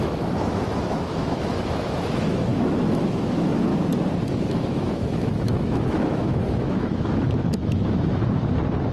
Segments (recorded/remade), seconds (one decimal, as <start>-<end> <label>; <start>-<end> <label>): 0.0-3.7 remade; 3.7-4.4 recorded; 4.4-8.2 remade; 8.2-8.9 recorded